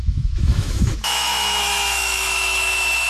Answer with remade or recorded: remade